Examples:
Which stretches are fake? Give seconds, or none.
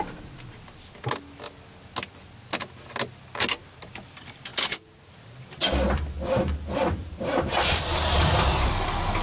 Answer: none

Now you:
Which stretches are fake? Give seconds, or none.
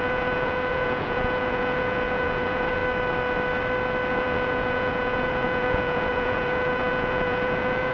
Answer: 0.0-2.8 (vocoder, Vocos); 4.1-7.9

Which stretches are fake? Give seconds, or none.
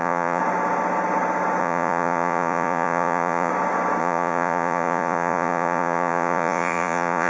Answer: 0.0-0.4 (vocoder, Vocos); 1.6-3.5; 4.0-7.3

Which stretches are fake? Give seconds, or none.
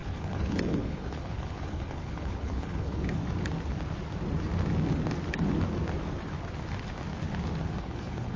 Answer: 0.0-3.2 (codec, HILCodec); 7.8-8.4